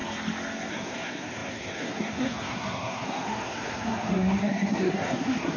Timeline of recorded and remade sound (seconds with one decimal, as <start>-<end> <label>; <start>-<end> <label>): 0.0-0.7 recorded; 0.7-5.6 remade